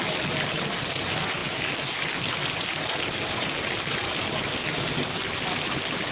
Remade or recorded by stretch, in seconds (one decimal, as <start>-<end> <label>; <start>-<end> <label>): 0.0-6.1 recorded